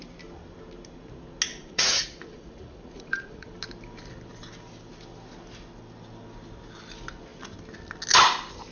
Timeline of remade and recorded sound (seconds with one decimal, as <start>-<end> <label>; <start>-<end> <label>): 0.0-1.5 recorded; 1.5-3.5 remade; 3.5-8.7 recorded